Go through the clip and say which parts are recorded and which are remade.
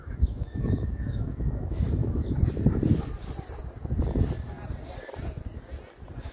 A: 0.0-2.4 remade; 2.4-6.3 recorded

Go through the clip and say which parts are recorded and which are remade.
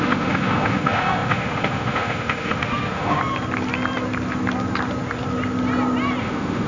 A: 0.0-3.2 remade; 3.2-6.2 recorded; 6.2-6.7 remade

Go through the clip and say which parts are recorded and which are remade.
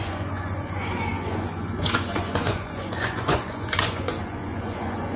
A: 0.0-5.2 remade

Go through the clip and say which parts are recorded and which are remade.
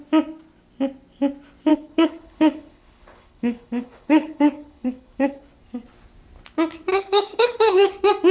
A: 0.0-1.7 recorded; 1.7-5.5 remade; 5.5-6.9 recorded; 6.9-7.9 remade; 7.9-8.3 recorded